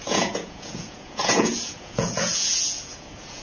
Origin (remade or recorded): remade